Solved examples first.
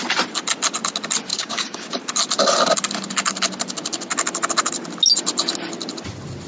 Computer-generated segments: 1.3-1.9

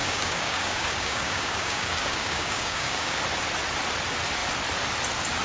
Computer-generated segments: 0.0-3.2

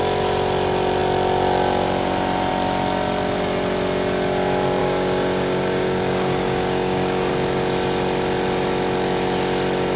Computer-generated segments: 4.8-7.3